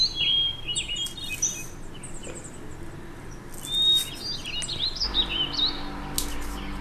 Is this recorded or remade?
recorded